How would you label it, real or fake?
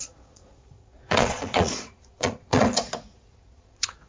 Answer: fake